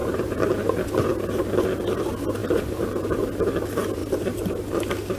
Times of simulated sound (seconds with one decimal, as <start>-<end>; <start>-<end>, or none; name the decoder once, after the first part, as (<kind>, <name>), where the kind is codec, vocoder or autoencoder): 0.0-0.5 (vocoder, BigVGAN v2); 2.4-3.2; 4.0-4.5